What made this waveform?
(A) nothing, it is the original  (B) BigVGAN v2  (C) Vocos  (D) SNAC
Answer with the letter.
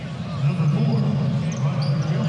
A